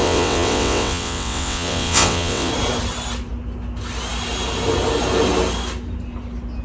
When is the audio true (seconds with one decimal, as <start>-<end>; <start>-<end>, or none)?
2.5-6.6